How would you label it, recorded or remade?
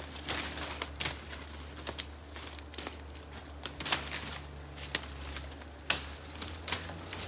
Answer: recorded